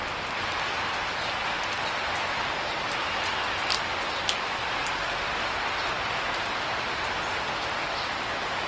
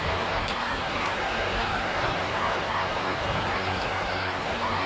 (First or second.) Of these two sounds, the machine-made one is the second